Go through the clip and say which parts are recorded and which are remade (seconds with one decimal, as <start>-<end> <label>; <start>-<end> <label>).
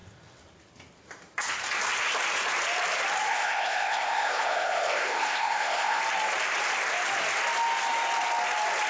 0.0-3.3 recorded; 3.3-6.0 remade; 6.0-8.9 recorded